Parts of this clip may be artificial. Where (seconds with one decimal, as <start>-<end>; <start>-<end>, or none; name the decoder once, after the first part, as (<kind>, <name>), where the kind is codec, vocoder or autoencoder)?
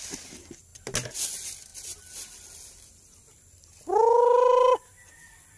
none